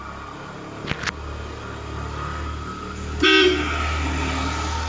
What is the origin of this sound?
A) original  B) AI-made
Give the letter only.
A